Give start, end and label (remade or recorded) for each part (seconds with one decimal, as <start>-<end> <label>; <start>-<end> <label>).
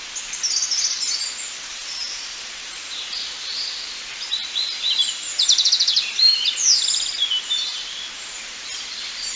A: 0.0-1.7 recorded; 1.7-5.7 remade; 5.7-9.4 recorded